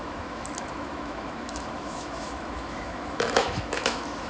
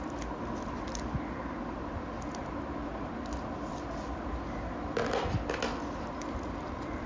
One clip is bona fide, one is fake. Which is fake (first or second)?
first